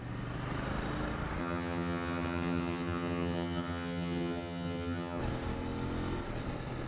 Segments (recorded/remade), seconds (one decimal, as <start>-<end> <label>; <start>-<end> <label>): 0.0-1.4 recorded; 1.4-5.2 remade; 5.2-6.9 recorded